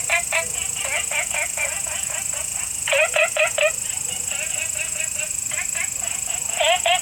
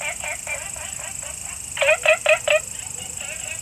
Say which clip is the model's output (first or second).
first